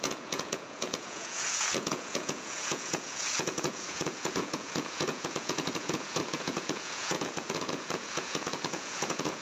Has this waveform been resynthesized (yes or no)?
yes